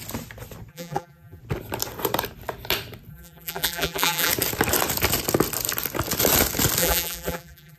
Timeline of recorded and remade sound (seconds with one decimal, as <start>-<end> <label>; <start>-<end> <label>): 0.0-0.7 recorded; 0.7-1.4 remade; 1.4-3.1 recorded; 3.1-4.3 remade; 4.3-6.8 recorded; 6.8-7.8 remade